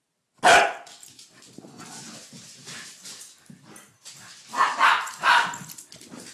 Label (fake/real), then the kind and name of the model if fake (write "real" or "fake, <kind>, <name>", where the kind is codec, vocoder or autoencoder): real